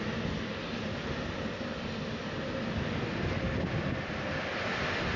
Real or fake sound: real